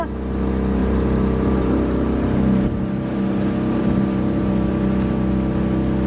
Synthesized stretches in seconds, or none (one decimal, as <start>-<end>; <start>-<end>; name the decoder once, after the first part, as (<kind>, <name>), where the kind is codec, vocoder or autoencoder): 0.8-4.5 (vocoder, BigVGAN v2)